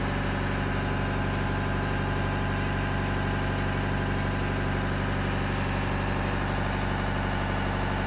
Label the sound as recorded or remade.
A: recorded